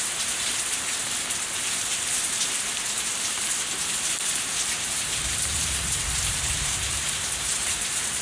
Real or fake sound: fake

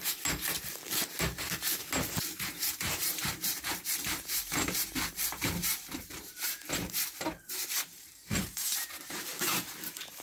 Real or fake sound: fake